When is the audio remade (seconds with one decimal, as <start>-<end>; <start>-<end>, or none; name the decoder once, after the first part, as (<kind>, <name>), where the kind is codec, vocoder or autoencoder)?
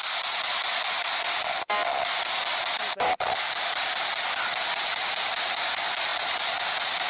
none